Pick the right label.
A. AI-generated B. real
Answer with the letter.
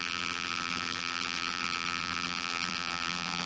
A